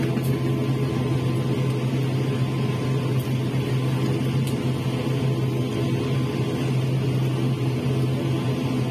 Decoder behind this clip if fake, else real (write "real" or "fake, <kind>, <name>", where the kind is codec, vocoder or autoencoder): real